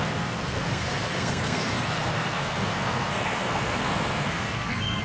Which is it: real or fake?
fake